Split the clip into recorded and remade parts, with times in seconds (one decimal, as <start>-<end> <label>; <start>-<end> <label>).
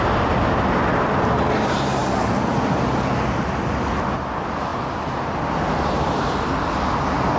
0.0-7.4 recorded